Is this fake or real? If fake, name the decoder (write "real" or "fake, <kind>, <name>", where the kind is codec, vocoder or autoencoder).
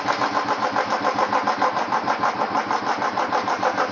real